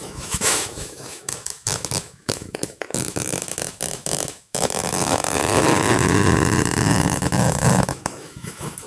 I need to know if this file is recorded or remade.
remade